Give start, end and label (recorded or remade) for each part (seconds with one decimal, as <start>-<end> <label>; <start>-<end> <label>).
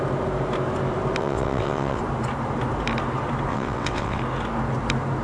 0.0-1.2 recorded; 1.2-2.0 remade; 2.0-3.5 recorded; 3.5-4.2 remade; 4.2-5.2 recorded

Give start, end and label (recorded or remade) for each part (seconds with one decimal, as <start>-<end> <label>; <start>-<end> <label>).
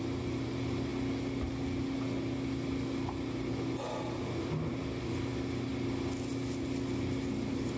0.0-7.8 recorded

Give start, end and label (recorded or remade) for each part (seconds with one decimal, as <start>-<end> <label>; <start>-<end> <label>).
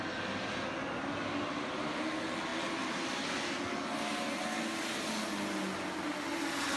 0.0-6.8 recorded